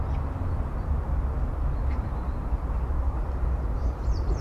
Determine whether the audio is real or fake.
real